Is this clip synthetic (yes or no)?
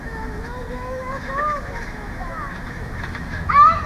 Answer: yes